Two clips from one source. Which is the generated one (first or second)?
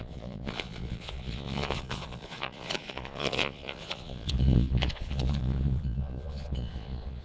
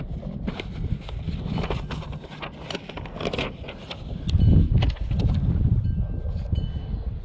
first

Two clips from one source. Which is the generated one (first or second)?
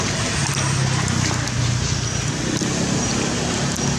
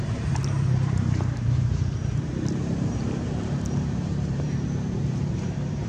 second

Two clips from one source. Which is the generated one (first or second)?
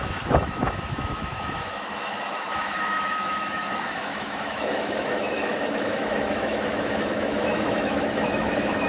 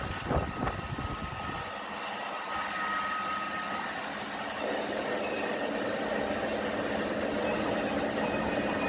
first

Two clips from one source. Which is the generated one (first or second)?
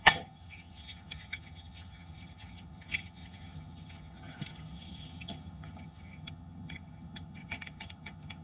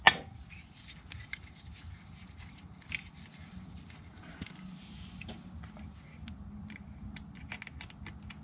first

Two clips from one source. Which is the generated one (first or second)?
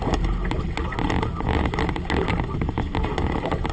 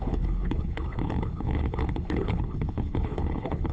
second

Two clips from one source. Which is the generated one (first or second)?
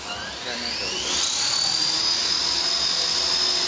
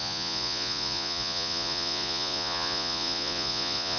second